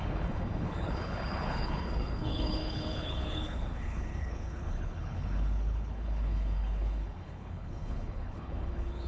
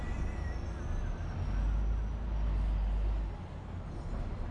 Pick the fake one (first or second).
first